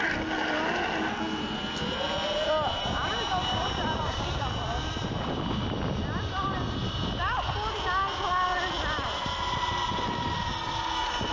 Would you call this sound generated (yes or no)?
no